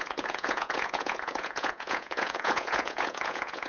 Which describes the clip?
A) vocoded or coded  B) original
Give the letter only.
A